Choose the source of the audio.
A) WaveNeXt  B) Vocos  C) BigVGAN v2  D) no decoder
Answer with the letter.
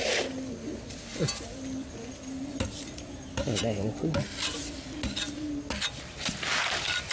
D